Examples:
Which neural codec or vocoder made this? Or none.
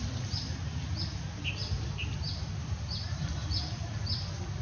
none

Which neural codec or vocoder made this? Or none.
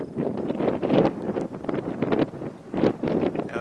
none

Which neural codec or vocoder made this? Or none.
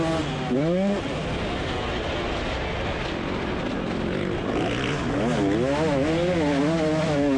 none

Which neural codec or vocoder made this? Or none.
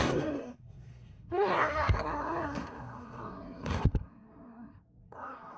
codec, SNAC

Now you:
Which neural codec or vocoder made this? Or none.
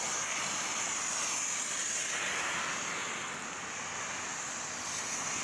none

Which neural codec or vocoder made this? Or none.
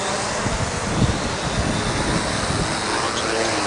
none